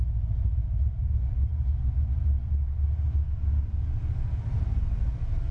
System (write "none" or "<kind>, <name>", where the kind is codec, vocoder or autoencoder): none